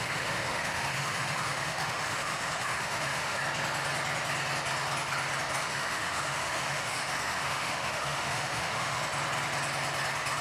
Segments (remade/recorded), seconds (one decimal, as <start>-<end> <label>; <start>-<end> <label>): 0.0-3.4 remade; 3.4-5.6 recorded; 5.6-9.0 remade; 9.0-10.4 recorded